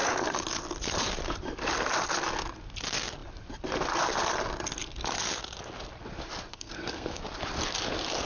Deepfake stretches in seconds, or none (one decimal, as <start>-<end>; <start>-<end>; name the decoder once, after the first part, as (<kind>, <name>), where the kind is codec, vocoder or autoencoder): 6.5-7.2 (codec, SNAC)